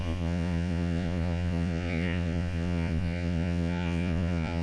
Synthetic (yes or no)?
yes